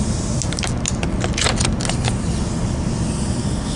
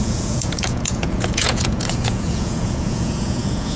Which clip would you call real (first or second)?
first